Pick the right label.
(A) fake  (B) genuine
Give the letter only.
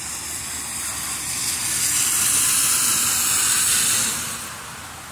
B